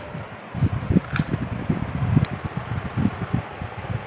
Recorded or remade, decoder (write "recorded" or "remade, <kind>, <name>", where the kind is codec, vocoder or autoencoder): remade, vocoder, BigVGAN v2